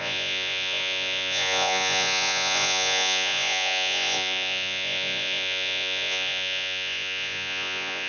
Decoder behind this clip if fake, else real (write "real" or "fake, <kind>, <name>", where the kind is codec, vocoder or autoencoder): fake, vocoder, Vocos